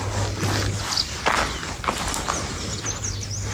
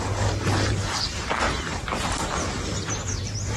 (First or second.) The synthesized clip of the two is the second